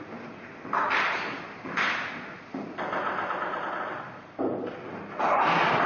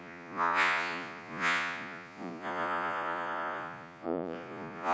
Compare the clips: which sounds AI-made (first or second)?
second